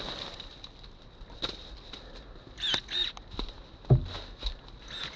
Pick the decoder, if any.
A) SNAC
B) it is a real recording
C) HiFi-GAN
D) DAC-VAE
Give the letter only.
B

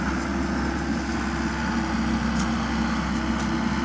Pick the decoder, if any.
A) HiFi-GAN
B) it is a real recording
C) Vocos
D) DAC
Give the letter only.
B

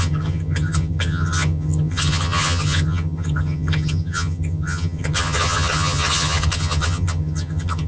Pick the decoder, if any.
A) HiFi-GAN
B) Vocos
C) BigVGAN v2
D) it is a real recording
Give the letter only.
A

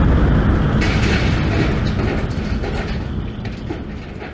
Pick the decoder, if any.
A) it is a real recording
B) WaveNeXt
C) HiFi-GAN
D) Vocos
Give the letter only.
A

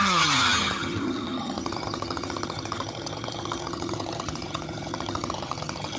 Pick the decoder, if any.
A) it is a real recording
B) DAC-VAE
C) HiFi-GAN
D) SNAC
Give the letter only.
C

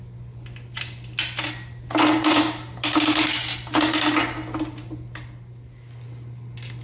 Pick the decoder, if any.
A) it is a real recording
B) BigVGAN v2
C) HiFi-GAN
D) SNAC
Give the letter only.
A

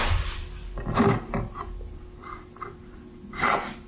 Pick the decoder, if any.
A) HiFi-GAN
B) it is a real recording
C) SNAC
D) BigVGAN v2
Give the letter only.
B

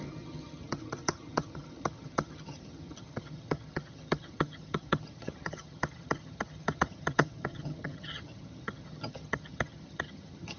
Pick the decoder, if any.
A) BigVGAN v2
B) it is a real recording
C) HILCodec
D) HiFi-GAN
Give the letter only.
D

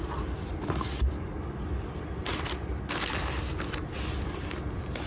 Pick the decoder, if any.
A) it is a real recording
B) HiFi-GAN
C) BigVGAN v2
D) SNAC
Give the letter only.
A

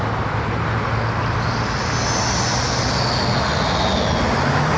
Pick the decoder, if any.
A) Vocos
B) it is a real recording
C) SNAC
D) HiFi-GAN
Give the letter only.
B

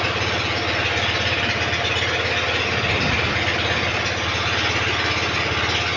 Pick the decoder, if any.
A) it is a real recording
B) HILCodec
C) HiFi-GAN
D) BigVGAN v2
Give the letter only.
A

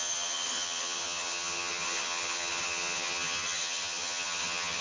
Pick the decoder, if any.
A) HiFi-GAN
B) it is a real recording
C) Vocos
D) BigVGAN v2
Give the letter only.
A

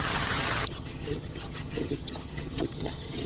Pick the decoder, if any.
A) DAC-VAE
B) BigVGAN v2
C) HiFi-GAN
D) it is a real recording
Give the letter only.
C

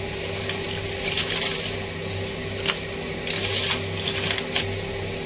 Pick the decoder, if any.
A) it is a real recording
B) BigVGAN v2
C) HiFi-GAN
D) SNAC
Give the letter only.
A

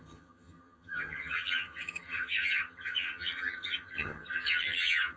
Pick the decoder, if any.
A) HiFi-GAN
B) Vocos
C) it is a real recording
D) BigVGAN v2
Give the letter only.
A